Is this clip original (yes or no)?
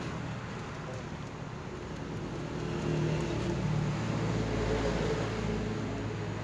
yes